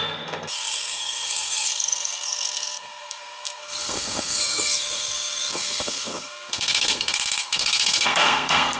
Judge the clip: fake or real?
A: fake